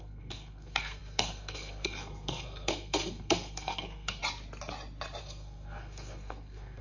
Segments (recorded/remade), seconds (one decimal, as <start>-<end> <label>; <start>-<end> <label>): 0.0-4.2 remade; 4.2-5.2 recorded; 5.2-6.8 remade